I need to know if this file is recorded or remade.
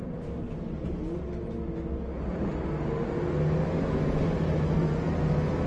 recorded